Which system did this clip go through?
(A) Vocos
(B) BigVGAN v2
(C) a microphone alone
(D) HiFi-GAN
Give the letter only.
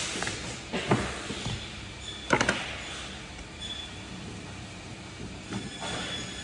C